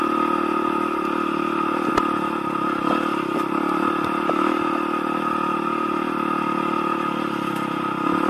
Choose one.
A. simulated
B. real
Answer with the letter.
B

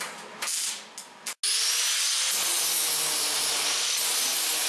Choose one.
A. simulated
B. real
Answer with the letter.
B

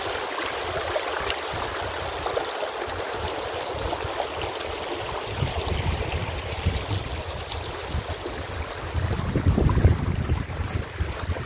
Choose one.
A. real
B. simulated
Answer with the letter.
A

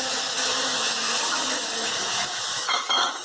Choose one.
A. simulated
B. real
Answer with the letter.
A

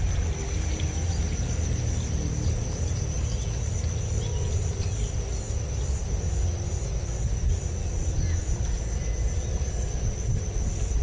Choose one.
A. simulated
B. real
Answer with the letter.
B